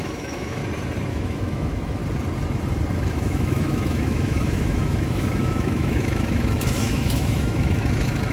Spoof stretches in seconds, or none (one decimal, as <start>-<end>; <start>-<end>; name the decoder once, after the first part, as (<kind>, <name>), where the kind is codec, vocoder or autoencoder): 0.0-0.6 (autoencoder, DAC-VAE); 1.1-2.0; 3.1-8.3